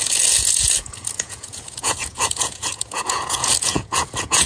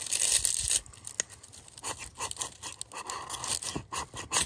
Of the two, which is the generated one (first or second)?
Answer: first